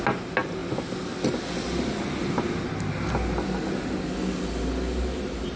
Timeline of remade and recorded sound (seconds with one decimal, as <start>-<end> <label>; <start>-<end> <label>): 0.0-5.6 recorded